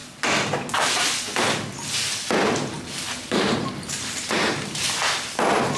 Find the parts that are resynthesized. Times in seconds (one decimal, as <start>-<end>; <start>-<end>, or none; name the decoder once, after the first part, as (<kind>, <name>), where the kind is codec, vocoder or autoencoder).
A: 3.2-5.0 (vocoder, BigVGAN v2)